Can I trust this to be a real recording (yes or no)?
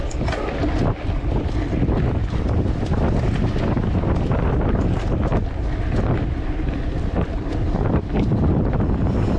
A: yes